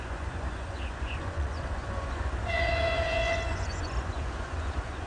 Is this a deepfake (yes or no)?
yes